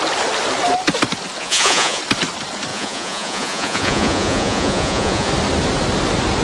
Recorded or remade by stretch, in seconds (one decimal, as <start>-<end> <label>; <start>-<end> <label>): 0.0-1.4 recorded; 1.4-2.0 remade; 2.0-2.7 recorded; 2.7-5.3 remade; 5.3-6.4 recorded